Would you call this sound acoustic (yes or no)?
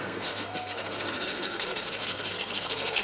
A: no